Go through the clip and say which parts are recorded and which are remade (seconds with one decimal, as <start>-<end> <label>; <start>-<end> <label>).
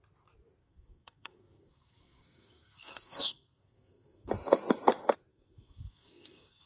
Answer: 0.0-0.6 recorded; 0.6-4.3 remade; 4.3-5.3 recorded; 5.3-6.7 remade